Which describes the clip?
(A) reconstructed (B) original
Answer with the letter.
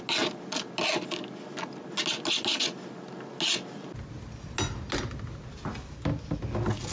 B